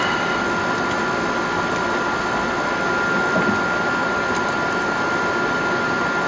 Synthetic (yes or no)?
no